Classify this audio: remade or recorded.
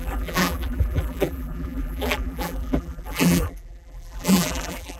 remade